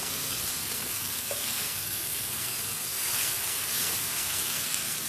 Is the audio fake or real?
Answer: fake